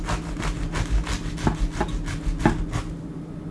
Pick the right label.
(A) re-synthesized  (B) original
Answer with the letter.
B